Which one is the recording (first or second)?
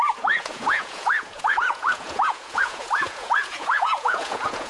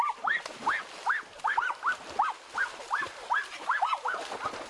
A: second